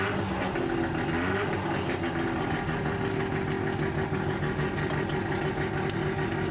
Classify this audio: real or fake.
real